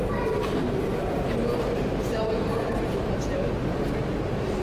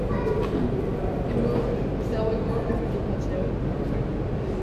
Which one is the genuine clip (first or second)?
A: second